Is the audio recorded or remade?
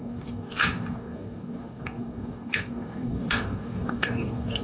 remade